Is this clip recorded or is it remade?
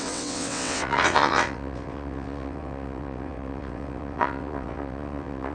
remade